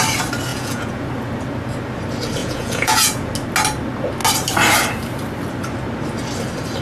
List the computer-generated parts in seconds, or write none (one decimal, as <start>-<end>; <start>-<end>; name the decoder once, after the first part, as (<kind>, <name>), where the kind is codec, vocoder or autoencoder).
0.5-1.1 (vocoder, Vocos); 2.4-3.3